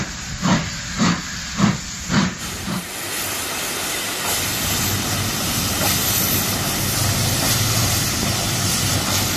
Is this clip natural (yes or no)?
yes